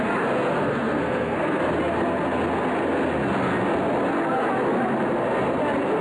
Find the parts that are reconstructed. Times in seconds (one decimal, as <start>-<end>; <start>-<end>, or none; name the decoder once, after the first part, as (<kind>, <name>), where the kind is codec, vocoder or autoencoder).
0.6-1.6 (codec, SNAC)